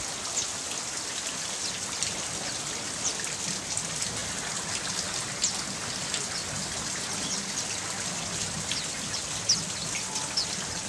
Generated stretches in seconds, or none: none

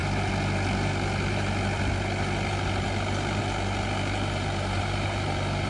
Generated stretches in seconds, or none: none

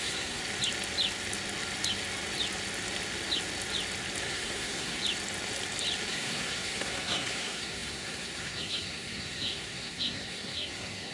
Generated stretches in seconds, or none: 0.0-0.4 (codec, SNAC); 4.2-5.0; 6.1-11.1

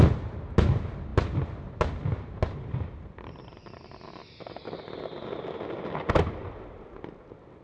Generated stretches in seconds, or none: none

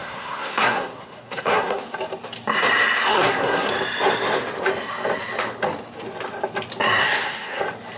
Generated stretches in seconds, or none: 0.0-1.8 (codec, SNAC); 3.1-3.7; 7.0-7.6

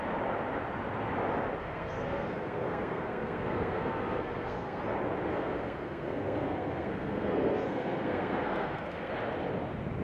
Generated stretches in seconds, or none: 1.6-4.8 (codec, SNAC); 5.3-9.1

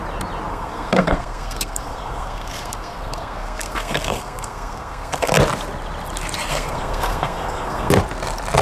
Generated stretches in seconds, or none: 0.5-5.3 (codec, SNAC); 6.5-7.9

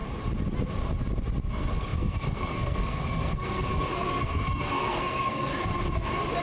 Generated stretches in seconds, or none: 1.5-5.5 (codec, SNAC)